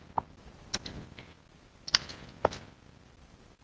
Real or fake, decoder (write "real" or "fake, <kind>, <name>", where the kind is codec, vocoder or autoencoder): real